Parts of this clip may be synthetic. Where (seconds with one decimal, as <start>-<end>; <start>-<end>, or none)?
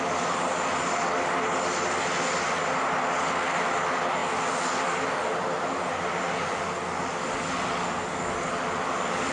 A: none